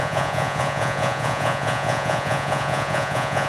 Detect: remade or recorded remade